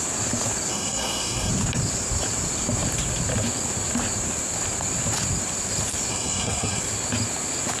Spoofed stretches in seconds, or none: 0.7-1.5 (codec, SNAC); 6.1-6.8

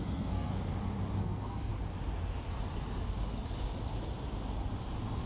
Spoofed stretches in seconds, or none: 0.0-0.5 (codec, SNAC); 1.2-1.7

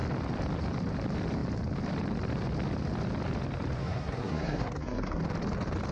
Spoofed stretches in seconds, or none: 3.8-5.2 (codec, SNAC)

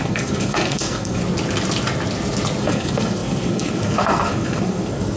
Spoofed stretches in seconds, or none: 0.0-1.2 (codec, SNAC); 2.6-5.2

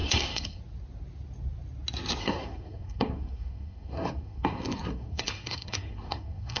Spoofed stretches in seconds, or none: 0.0-0.6 (codec, SNAC); 2.2-6.6

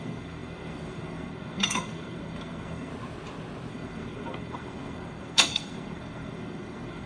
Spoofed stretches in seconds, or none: 0.0-2.9 (codec, SNAC); 3.7-7.1

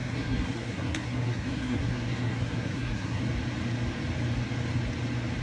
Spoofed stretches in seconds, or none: 0.0-3.2 (codec, SNAC)